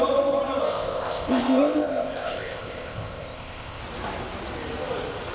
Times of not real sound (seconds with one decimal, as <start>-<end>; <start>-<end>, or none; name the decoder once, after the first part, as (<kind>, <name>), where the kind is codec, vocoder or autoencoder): 0.6-3.8 (codec, ZipCodec)